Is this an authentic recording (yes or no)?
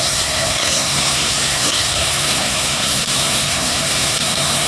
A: no